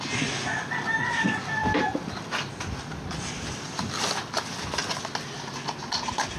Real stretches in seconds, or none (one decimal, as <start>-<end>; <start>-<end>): 0.0-1.6; 4.9-6.4